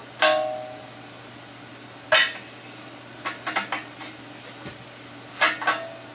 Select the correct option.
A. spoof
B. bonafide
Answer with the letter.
B